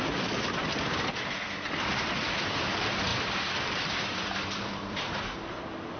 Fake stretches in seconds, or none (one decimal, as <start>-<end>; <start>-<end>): 3.1-5.2